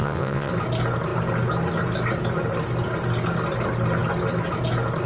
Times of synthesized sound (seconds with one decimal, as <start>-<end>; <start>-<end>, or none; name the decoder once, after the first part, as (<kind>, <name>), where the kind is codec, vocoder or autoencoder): 0.0-0.5 (vocoder, WaveNeXt)